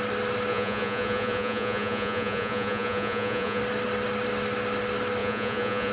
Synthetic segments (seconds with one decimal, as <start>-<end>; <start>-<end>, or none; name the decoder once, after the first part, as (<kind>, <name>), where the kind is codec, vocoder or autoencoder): 0.5-3.6 (vocoder, Vocos); 5.2-5.9